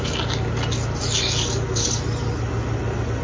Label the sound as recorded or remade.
recorded